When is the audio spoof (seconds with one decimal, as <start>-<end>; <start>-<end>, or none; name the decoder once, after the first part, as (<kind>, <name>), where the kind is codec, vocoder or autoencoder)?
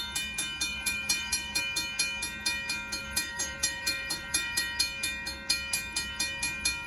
0.7-1.6 (vocoder, BigVGAN v2); 3.0-4.6